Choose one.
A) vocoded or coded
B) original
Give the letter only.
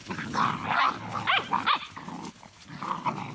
B